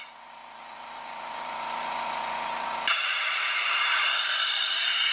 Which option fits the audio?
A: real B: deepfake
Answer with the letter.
B